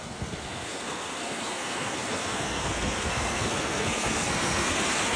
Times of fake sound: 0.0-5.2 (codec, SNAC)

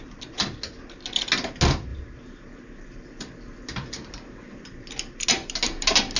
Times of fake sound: none

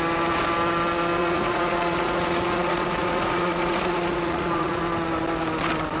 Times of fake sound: 1.2-4.8 (vocoder, Vocos)

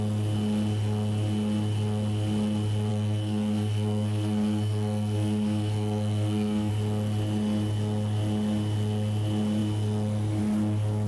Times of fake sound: 2.9-6.7 (codec, SNAC)

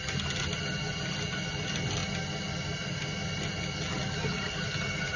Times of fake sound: none